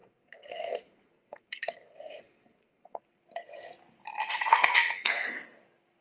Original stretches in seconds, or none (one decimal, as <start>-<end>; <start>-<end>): 3.0-4.5; 5.3-6.0